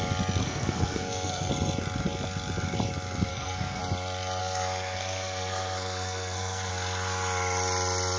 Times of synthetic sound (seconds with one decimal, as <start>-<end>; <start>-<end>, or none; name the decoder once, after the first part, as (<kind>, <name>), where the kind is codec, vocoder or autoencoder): 0.4-1.5 (codec, SNAC); 3.3-3.8; 4.4-6.7